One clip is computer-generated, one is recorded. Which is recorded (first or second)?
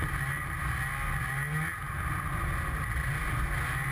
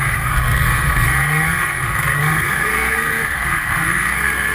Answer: first